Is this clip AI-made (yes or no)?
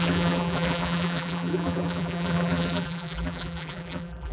yes